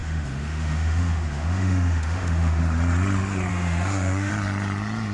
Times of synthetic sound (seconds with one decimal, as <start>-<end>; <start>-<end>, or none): 0.0-2.6; 3.5-4.3